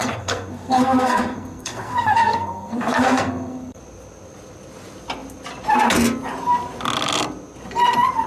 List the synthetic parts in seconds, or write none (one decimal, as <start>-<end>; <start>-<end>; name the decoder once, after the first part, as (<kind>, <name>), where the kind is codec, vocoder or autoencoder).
0.0-3.8 (codec, SNAC)